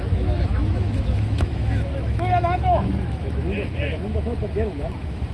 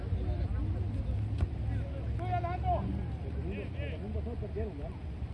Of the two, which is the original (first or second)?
second